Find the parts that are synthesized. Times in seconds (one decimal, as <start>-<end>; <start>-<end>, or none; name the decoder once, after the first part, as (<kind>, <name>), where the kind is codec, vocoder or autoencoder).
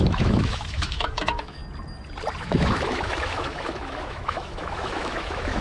0.0-1.6 (autoencoder, DAC-VAE); 2.4-5.6